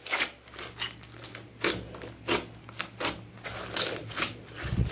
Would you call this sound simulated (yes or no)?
no